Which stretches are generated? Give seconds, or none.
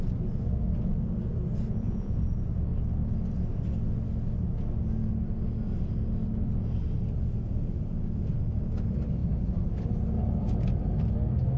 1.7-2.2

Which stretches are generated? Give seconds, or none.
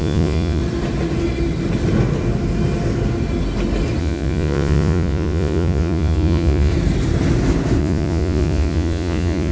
0.0-0.6; 4.0-6.7; 7.8-9.5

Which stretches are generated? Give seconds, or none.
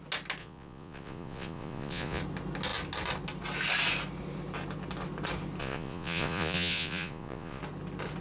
0.4-2.2; 5.6-7.6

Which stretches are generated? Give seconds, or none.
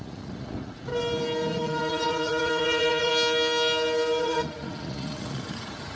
0.0-0.9; 1.5-3.1; 4.2-6.0